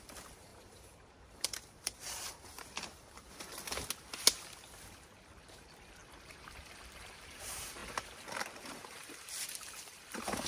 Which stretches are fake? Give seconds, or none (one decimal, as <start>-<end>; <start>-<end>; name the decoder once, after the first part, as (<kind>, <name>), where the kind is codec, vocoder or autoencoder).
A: 0.0-3.5 (vocoder, BigVGAN v2); 5.4-7.8; 8.6-10.5